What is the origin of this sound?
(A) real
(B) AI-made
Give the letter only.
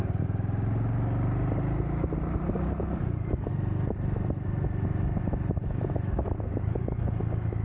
A